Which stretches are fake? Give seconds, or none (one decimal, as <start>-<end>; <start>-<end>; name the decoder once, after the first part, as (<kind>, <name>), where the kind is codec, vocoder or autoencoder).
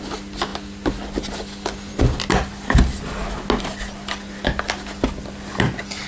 none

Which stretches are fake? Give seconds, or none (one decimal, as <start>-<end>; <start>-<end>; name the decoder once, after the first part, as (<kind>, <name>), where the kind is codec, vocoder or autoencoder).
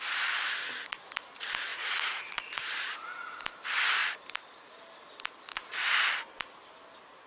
1.7-2.4 (vocoder, Vocos); 5.5-6.1